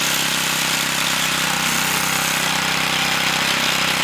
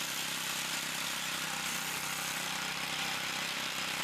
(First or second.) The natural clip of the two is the first